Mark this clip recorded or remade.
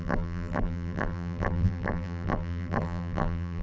remade